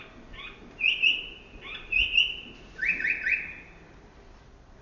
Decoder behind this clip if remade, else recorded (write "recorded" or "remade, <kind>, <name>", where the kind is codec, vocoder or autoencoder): recorded